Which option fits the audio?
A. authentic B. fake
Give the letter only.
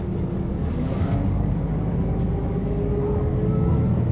B